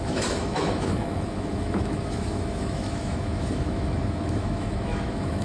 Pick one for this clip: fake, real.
fake